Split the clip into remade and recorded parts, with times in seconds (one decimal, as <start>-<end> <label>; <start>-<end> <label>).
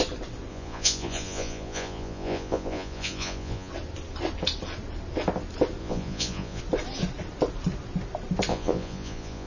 0.0-0.5 recorded; 0.5-3.7 remade; 3.7-5.8 recorded; 5.8-6.6 remade; 6.6-8.5 recorded; 8.5-9.5 remade